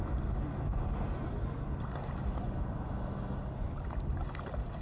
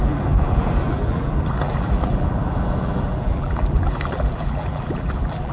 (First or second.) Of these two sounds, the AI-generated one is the second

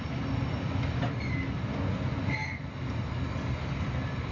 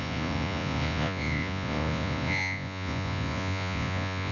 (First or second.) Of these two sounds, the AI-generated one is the second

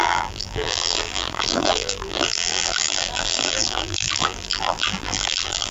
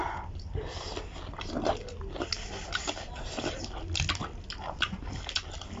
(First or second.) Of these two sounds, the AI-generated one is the first